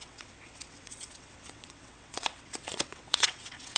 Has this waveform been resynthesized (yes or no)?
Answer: yes